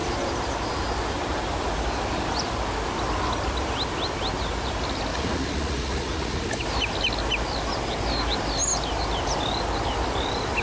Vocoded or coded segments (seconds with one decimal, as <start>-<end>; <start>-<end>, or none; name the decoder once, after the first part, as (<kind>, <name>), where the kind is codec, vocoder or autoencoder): 5.1-6.4 (vocoder, Vocos)